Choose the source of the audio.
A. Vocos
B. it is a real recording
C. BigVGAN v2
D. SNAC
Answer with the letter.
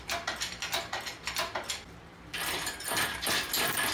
C